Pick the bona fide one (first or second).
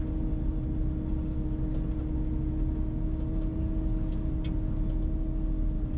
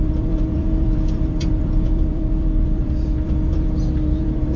first